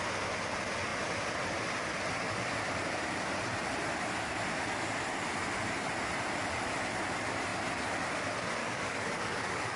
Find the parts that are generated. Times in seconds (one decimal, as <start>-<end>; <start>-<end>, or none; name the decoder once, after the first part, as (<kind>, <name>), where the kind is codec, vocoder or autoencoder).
8.6-9.8 (codec, DAC)